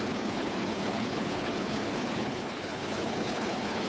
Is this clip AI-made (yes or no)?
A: yes